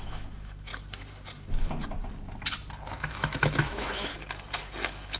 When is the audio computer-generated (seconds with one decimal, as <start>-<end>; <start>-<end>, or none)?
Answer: 0.0-0.7; 3.1-4.1